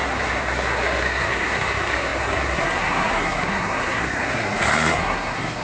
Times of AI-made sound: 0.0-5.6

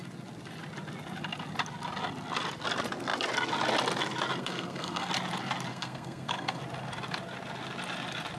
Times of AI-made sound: 4.4-5.1; 5.7-6.6

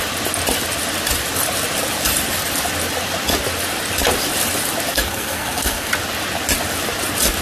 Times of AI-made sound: 4.9-5.9

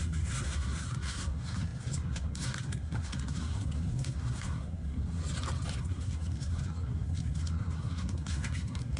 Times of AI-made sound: 0.0-5.2; 5.8-9.0

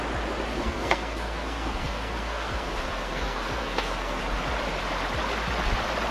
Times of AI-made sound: 0.5-4.2

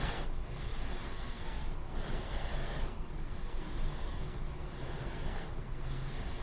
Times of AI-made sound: 0.0-6.4

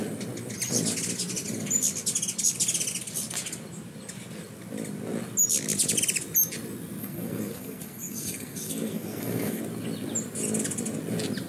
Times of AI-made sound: 7.0-9.6